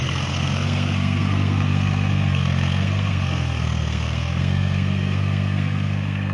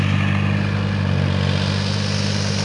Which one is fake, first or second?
first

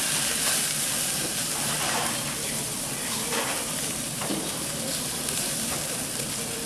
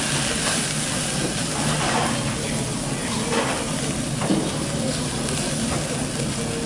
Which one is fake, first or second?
first